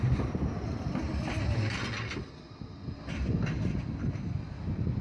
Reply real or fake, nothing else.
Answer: real